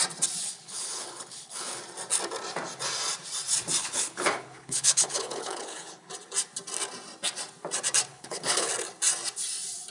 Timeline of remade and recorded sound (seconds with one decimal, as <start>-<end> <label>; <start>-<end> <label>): 0.0-0.4 recorded; 0.4-1.8 remade; 1.8-3.8 recorded; 3.8-6.1 remade; 6.1-8.1 recorded; 8.1-8.7 remade; 8.7-9.9 recorded